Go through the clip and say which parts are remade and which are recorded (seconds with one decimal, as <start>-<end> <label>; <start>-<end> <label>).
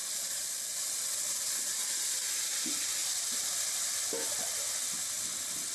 0.0-3.0 recorded; 3.0-4.1 remade; 4.1-5.7 recorded